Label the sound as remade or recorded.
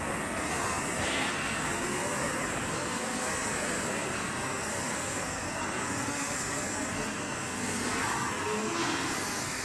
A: remade